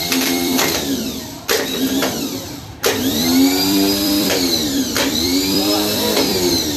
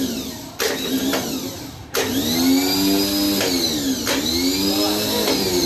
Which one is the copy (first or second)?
first